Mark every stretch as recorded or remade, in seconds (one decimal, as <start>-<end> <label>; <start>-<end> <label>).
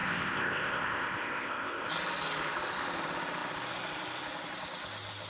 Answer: 0.0-1.9 remade; 1.9-5.3 recorded